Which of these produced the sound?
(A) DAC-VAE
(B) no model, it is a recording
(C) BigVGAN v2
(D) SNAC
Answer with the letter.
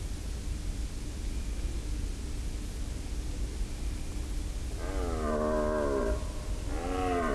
B